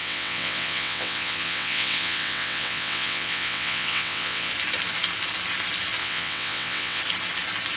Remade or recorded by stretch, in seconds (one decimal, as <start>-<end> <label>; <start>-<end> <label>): 0.0-4.5 remade; 4.5-6.0 recorded; 6.0-7.0 remade; 7.0-7.8 recorded